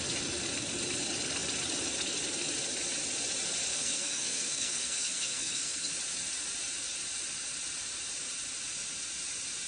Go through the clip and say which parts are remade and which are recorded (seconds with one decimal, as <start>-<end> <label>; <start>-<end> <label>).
0.0-3.7 recorded; 3.7-5.9 remade; 5.9-9.7 recorded